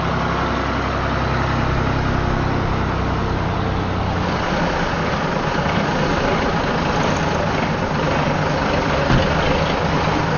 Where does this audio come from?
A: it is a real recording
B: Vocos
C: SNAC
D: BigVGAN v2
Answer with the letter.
A